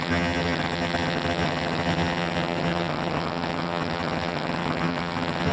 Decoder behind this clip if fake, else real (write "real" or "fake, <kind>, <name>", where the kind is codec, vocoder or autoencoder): fake, vocoder, HiFi-GAN